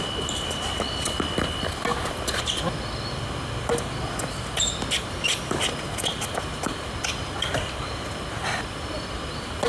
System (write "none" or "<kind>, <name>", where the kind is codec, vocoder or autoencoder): none